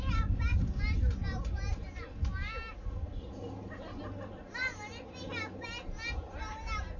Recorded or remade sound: recorded